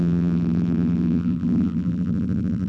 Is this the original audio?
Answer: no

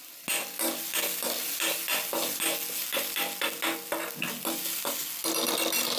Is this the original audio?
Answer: yes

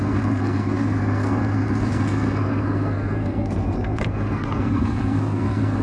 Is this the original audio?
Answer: no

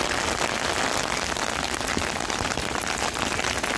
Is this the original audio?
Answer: yes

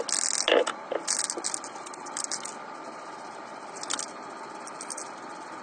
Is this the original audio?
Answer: yes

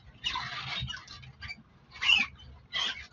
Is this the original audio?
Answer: yes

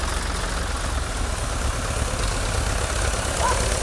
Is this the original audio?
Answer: yes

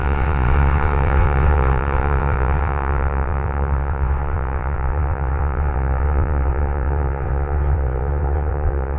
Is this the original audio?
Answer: no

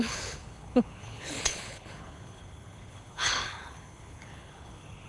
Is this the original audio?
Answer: no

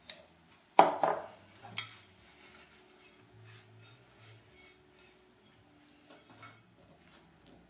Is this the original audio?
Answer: yes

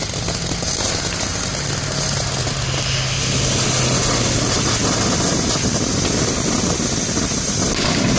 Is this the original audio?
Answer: yes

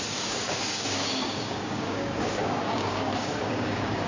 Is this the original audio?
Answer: no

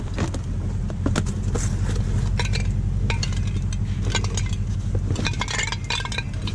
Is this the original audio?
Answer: yes